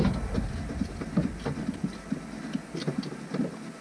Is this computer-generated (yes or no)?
no